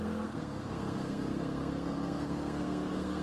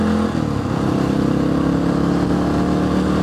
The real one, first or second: second